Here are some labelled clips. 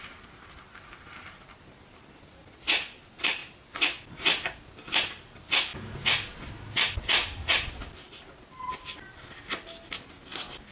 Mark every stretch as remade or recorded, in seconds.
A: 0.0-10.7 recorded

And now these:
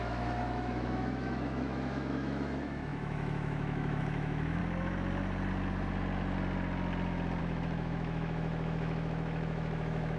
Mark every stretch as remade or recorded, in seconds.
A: 0.0-4.6 remade; 4.6-7.4 recorded; 7.4-10.2 remade

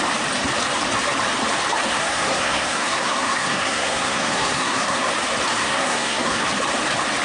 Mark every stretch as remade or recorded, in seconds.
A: 0.0-1.9 recorded; 1.9-5.1 remade; 5.1-5.6 recorded; 5.6-6.5 remade; 6.5-7.2 recorded

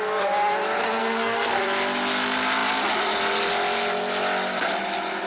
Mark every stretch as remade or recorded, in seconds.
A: 0.0-1.0 recorded; 1.0-1.6 remade; 1.6-5.3 recorded

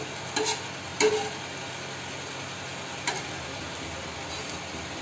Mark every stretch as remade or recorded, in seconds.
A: 0.0-5.0 recorded

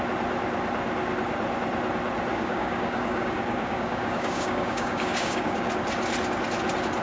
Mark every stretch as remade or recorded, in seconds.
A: 0.0-2.3 recorded; 2.3-5.7 remade; 5.7-7.0 recorded